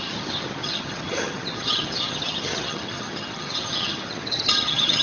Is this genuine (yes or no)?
no